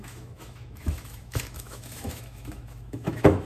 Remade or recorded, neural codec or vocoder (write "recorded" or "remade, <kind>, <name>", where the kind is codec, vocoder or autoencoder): remade, autoencoder, DAC-VAE